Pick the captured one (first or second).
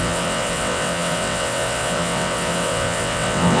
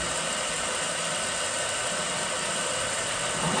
second